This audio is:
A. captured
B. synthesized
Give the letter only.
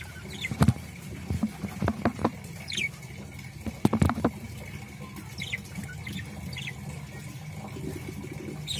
A